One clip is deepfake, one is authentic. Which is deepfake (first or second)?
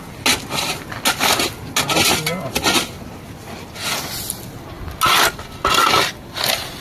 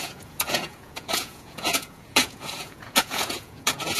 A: second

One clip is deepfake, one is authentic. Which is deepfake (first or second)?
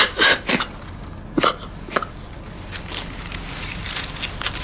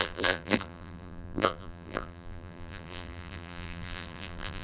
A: second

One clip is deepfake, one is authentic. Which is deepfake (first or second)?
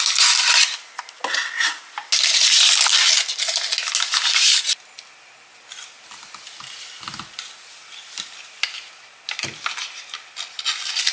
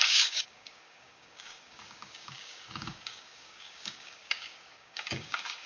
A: second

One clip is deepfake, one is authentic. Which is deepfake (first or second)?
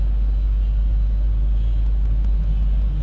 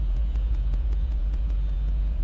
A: second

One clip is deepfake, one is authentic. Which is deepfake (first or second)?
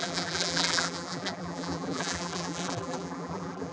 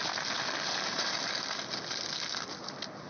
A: first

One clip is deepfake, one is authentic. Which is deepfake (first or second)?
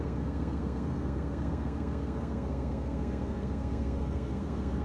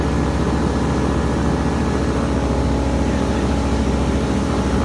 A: first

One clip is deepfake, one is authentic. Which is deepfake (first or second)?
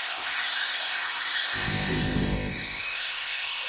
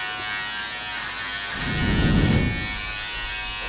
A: first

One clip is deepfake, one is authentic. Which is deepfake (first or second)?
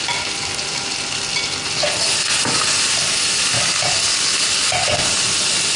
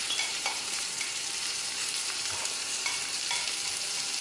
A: second